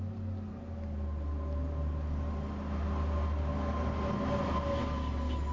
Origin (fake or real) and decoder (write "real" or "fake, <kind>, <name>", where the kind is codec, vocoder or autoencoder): real